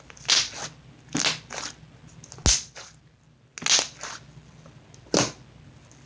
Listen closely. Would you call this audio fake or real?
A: real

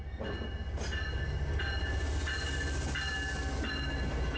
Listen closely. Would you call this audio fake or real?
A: real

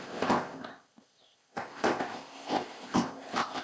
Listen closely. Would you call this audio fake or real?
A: fake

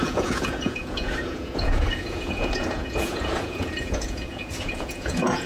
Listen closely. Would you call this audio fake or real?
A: fake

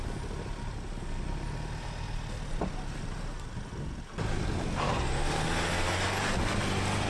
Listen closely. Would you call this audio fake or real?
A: real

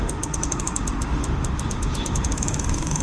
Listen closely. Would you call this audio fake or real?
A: fake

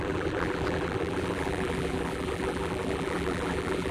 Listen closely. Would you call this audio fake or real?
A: fake